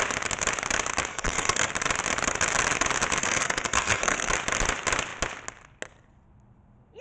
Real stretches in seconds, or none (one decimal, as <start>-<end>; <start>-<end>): 0.0-1.1; 1.7-3.2; 4.3-7.0